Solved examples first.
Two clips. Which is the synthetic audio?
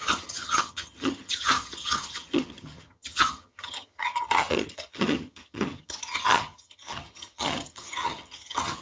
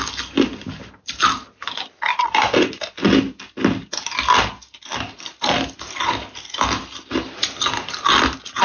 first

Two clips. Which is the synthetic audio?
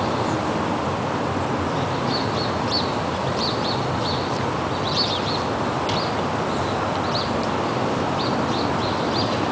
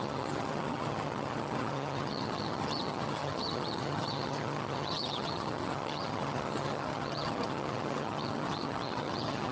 second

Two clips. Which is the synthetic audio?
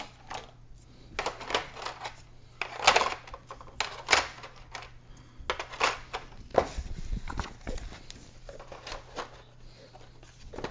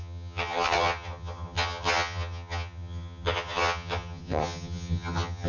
second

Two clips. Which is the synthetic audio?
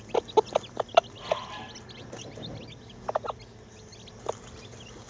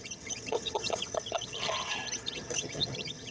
second